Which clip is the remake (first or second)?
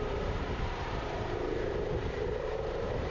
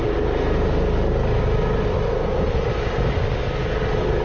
first